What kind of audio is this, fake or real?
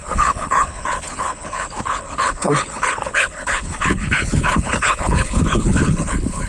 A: fake